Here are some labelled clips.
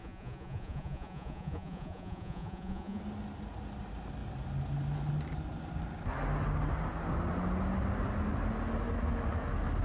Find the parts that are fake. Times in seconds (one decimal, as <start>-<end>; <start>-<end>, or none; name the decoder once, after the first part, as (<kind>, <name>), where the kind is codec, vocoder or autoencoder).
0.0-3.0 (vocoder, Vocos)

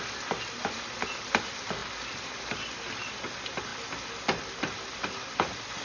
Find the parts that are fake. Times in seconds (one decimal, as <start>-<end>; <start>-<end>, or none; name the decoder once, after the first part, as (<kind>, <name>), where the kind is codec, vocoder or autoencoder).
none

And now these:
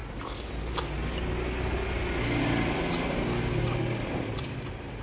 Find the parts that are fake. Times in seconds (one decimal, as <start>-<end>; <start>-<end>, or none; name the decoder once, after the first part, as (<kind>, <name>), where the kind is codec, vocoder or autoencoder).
none

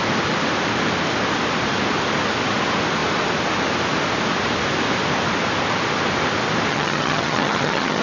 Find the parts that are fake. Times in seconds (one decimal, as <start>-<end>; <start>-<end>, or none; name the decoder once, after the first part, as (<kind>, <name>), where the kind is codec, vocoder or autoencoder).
6.7-8.0 (vocoder, HiFi-GAN)